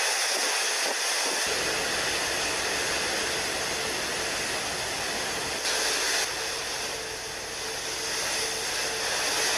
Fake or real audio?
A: real